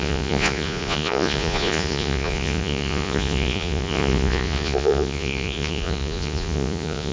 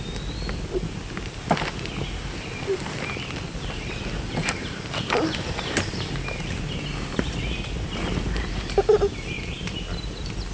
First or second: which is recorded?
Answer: second